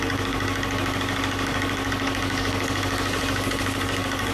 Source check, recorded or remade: remade